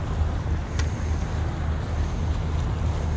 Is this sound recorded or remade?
recorded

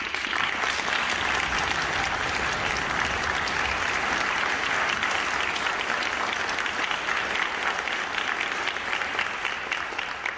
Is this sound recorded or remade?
recorded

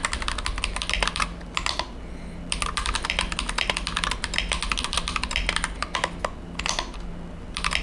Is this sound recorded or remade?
recorded